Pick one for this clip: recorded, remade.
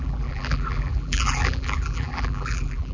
remade